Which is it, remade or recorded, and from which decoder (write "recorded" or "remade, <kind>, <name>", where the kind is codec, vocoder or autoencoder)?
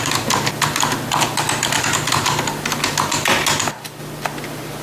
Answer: recorded